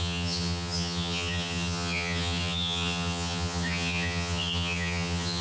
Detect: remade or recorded remade